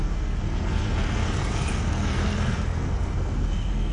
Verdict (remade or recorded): remade